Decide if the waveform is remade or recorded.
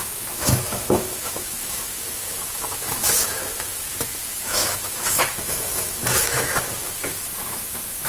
remade